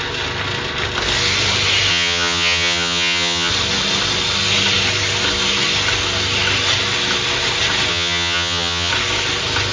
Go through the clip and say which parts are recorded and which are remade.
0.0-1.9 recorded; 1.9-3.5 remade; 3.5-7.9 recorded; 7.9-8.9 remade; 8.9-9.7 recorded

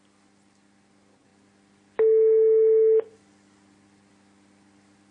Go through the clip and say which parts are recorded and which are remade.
0.0-5.1 recorded

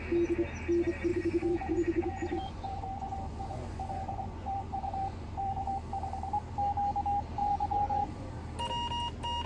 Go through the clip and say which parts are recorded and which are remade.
0.0-1.1 recorded; 1.1-5.7 remade; 5.7-7.4 recorded; 7.4-8.3 remade; 8.3-9.5 recorded

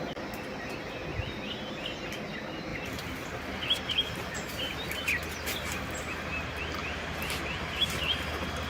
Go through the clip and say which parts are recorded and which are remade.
0.0-2.7 recorded; 2.7-3.4 remade; 3.4-6.8 recorded; 6.8-8.0 remade; 8.0-8.7 recorded